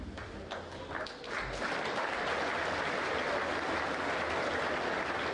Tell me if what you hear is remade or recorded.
recorded